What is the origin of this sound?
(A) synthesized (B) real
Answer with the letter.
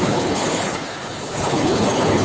A